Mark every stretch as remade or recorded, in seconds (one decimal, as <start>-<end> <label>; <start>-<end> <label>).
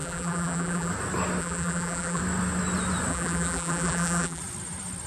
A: 0.0-0.9 remade; 0.9-1.4 recorded; 1.4-2.2 remade; 2.2-3.1 recorded; 3.1-4.4 remade; 4.4-5.1 recorded